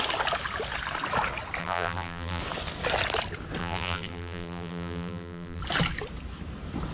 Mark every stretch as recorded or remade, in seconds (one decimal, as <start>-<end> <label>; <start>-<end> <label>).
0.0-1.6 recorded; 1.6-2.4 remade; 2.4-3.6 recorded; 3.6-5.6 remade; 5.6-6.9 recorded